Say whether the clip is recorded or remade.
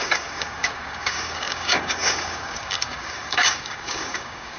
remade